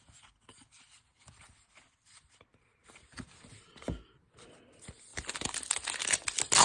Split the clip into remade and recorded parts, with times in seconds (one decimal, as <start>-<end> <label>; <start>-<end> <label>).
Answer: 0.0-6.6 recorded

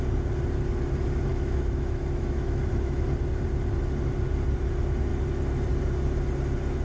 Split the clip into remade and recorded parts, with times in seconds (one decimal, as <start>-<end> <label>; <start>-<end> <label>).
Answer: 0.0-1.3 recorded; 1.3-3.1 remade; 3.1-6.8 recorded

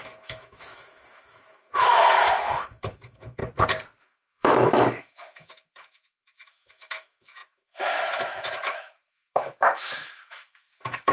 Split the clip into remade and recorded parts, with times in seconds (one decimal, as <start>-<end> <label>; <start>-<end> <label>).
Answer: 0.0-3.4 remade; 3.4-4.0 recorded; 4.0-11.1 remade

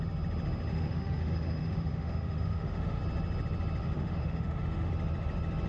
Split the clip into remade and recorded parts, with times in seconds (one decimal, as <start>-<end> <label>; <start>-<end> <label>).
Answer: 0.0-0.7 recorded; 0.7-3.0 remade; 3.0-3.8 recorded; 3.8-4.9 remade; 4.9-5.7 recorded